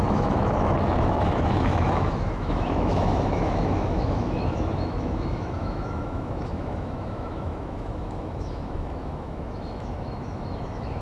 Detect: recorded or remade remade